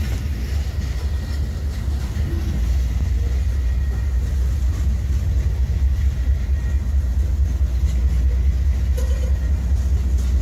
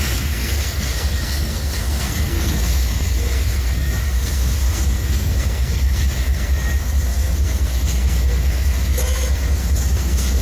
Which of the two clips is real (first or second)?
first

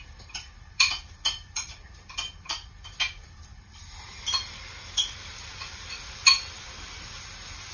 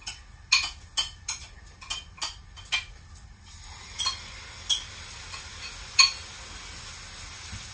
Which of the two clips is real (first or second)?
second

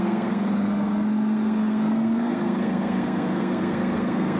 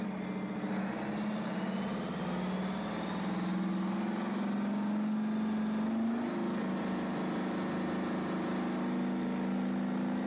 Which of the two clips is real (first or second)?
second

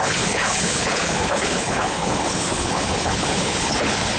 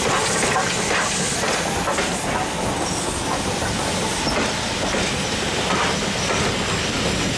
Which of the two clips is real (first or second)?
second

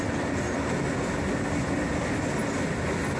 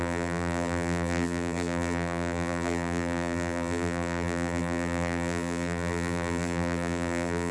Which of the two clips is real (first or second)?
first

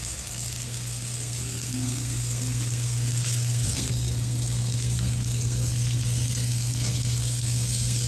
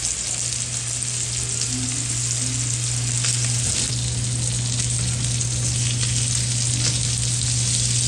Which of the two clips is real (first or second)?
second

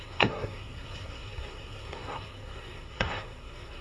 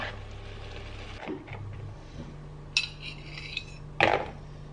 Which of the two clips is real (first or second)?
second